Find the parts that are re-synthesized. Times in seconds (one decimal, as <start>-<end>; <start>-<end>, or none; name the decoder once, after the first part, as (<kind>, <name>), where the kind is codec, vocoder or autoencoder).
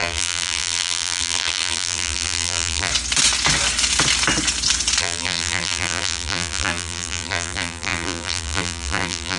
0.0-2.9 (vocoder, BigVGAN v2); 5.0-9.4